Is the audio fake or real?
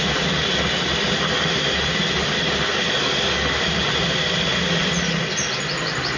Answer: real